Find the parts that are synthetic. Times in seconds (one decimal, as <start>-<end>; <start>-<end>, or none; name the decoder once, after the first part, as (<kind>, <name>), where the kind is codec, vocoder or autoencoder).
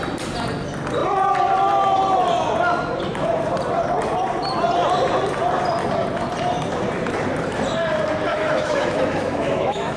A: 8.3-10.0 (autoencoder, DAC-VAE)